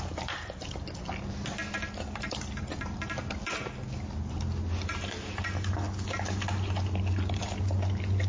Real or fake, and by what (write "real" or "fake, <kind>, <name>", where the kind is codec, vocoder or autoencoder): real